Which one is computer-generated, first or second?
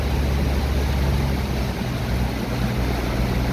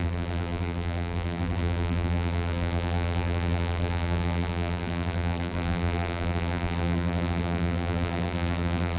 second